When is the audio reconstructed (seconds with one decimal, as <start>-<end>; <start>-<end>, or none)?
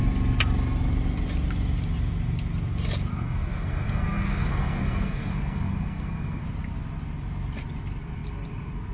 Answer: 3.1-6.4